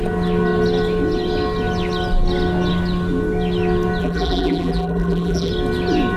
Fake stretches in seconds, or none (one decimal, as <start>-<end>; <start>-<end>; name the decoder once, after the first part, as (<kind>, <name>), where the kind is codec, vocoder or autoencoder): 4.0-5.5 (vocoder, BigVGAN v2)